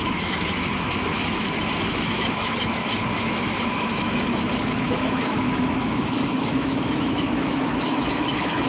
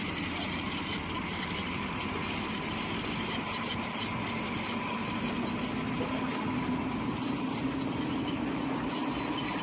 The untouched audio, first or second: second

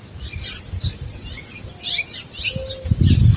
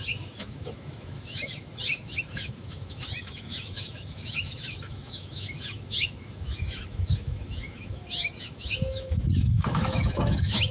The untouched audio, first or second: first